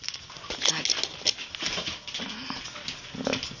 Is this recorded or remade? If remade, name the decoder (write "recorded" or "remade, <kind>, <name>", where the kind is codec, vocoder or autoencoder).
recorded